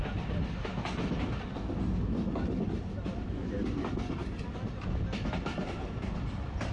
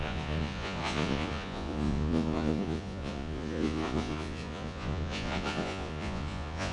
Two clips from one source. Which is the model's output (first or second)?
second